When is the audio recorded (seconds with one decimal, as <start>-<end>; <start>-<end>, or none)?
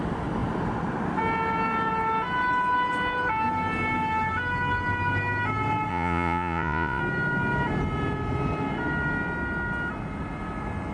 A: 0.0-5.9; 7.0-10.9